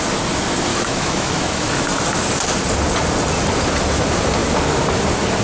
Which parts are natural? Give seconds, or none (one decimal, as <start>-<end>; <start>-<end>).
0.0-0.7; 1.7-5.4

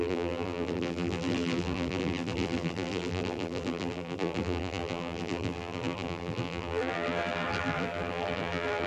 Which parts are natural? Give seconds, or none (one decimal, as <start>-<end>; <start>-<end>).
none

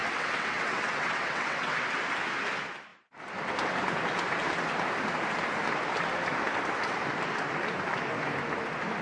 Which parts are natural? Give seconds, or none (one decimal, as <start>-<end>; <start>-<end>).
1.8-9.0